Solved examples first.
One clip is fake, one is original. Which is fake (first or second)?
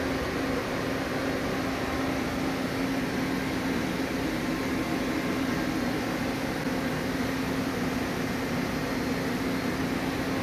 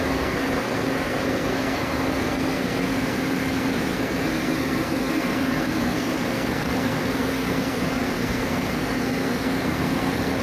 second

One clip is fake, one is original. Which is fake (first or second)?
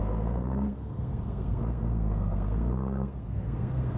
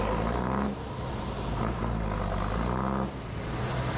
first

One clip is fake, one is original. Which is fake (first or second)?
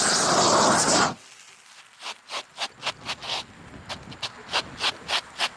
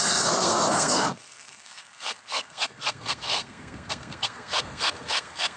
second